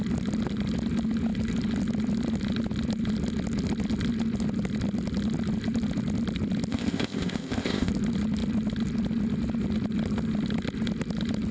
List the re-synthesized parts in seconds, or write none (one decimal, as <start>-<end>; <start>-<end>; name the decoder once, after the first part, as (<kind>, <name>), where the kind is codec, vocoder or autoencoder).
6.7-7.9 (codec, ZipCodec)